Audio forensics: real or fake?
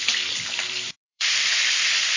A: fake